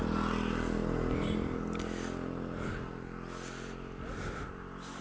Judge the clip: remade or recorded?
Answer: recorded